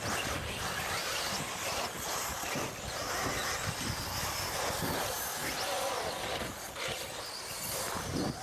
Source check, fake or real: real